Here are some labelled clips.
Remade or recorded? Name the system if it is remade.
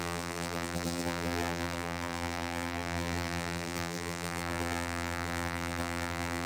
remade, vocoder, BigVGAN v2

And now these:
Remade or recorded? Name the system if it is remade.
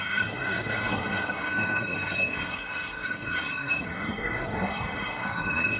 remade, codec, SNAC